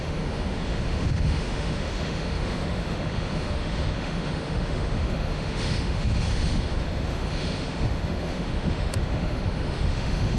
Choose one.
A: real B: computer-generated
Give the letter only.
B